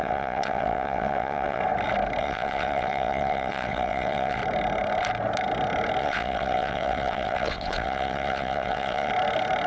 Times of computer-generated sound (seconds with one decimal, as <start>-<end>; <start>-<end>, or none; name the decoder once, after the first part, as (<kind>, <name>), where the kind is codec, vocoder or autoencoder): 0.0-1.6 (vocoder, WaveNeXt); 2.2-4.4; 6.0-9.1